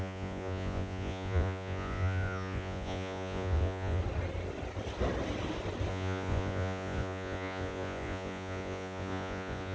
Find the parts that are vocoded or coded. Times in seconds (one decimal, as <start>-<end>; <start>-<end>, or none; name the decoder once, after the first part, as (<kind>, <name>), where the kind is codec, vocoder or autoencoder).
0.0-4.0 (vocoder, Vocos); 5.9-9.7